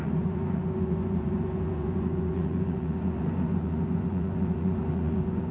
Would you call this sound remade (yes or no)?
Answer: yes